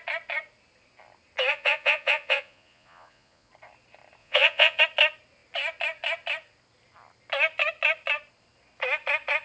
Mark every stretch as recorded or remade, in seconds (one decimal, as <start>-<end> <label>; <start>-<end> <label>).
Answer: 0.0-1.5 recorded; 1.5-3.5 remade; 3.5-4.2 recorded; 4.2-4.8 remade; 4.8-9.4 recorded